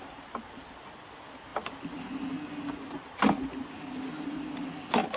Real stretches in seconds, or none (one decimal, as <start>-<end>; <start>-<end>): 0.0-5.2